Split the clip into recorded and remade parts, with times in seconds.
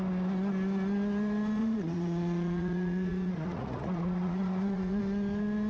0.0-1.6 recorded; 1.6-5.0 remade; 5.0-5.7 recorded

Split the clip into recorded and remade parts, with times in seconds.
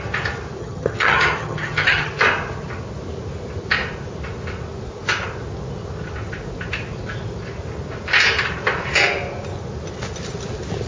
0.0-0.6 recorded; 0.6-2.1 remade; 2.1-10.9 recorded